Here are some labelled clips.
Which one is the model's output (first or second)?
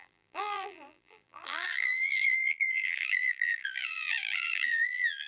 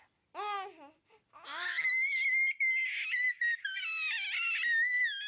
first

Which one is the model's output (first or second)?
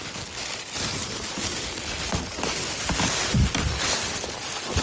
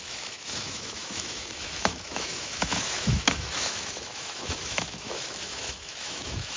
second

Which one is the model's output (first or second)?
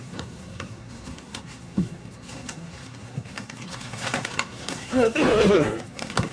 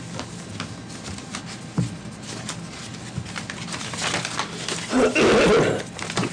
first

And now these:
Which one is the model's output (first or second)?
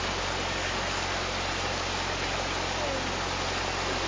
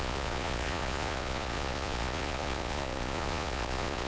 second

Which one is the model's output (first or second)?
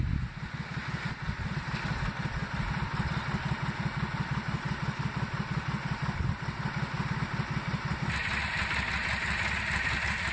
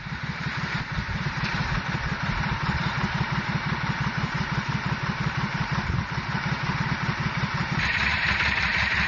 second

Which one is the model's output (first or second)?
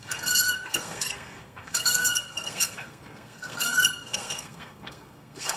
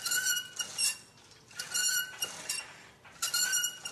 first